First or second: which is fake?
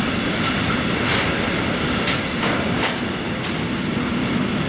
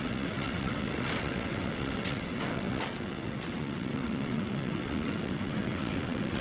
second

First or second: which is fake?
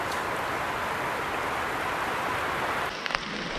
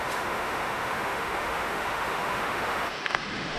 second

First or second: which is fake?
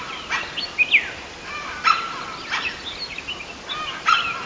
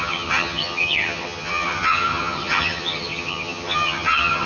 second